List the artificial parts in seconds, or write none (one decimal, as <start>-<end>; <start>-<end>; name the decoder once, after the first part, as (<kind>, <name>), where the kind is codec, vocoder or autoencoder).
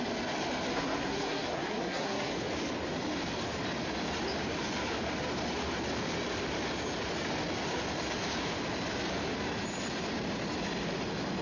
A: 0.7-2.3 (codec, SNAC)